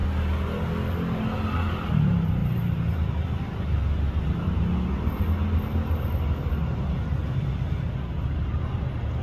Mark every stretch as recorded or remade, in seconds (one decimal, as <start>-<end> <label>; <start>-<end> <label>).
0.0-9.2 recorded